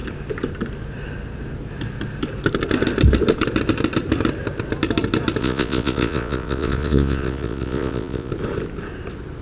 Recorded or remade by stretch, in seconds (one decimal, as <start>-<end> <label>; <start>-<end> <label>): 0.0-5.4 recorded; 5.4-8.3 remade; 8.3-9.4 recorded